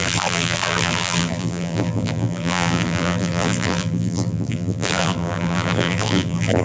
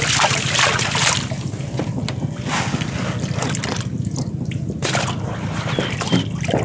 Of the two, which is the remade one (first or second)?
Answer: first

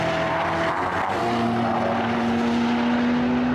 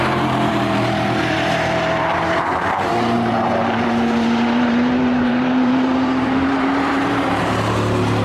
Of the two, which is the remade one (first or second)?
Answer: second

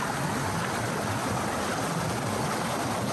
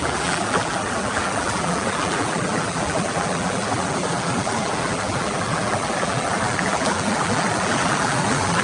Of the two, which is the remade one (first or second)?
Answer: second